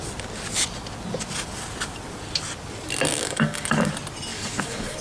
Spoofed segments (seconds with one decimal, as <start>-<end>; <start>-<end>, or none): 3.1-3.9; 4.3-5.0